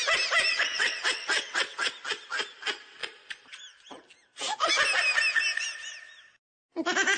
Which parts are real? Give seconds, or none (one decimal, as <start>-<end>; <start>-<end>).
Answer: 0.0-0.5; 1.9-7.2